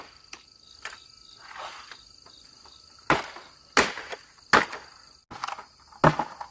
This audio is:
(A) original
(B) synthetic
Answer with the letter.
A